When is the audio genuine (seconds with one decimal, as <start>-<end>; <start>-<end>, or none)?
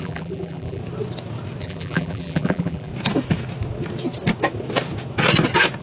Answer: 0.8-1.6; 2.9-5.8